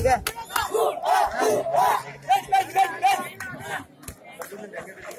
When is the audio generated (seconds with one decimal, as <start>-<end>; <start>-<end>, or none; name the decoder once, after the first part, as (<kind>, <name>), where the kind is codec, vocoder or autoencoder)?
none